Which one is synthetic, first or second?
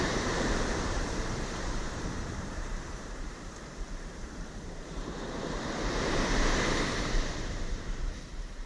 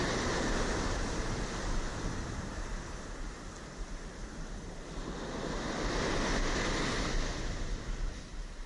first